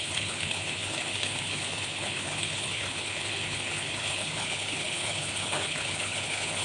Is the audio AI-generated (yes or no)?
yes